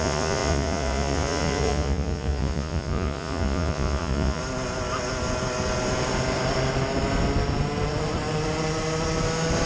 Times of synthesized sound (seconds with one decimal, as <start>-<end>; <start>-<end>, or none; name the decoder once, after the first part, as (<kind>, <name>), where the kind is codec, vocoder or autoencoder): 0.0-4.4 (vocoder, Vocos)